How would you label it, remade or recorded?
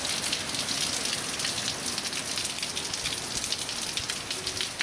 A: recorded